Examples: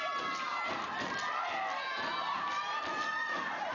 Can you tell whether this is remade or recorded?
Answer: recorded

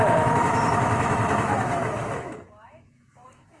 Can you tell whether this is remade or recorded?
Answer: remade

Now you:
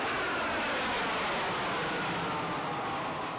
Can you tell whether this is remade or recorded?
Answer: recorded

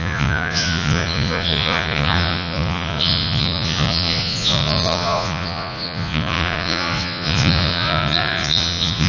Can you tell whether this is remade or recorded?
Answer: remade